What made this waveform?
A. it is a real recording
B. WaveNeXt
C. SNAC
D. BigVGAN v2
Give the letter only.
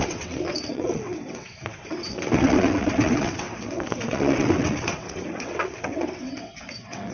B